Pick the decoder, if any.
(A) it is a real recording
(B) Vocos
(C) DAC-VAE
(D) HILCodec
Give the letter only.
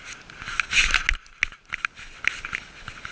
A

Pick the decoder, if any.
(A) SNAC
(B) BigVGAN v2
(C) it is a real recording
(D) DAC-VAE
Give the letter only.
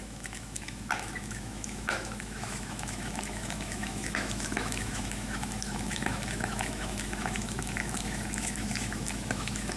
D